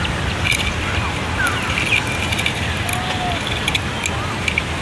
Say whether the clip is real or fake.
real